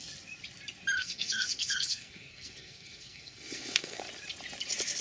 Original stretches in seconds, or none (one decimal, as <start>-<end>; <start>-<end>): 0.0-1.0; 4.0-5.0